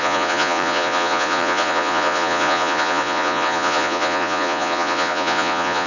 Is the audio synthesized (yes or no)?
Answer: yes